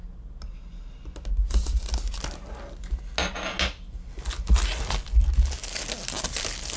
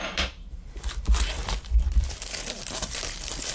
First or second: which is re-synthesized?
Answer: second